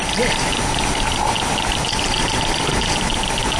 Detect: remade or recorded recorded